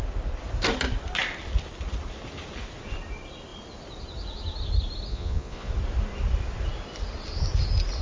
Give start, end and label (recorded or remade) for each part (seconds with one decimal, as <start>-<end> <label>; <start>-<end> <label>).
0.0-5.1 recorded; 5.1-5.7 remade; 5.7-8.0 recorded